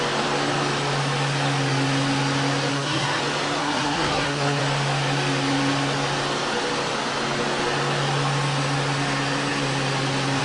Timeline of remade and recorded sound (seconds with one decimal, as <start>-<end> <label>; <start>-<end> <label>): 0.0-2.7 recorded; 2.7-3.2 remade; 3.2-3.6 recorded; 3.6-4.6 remade; 4.6-10.4 recorded